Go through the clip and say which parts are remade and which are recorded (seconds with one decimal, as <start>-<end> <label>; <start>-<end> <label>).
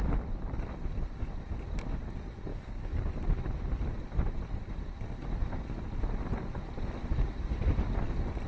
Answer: 0.0-2.5 recorded; 2.5-3.1 remade; 3.1-8.5 recorded